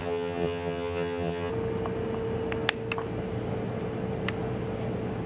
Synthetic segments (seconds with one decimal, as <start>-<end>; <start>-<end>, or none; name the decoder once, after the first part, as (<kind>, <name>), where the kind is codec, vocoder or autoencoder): 0.0-1.5 (vocoder, HiFi-GAN)